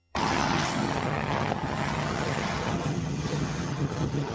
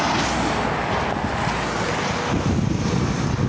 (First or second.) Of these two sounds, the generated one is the first